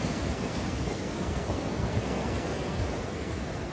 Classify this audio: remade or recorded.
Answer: remade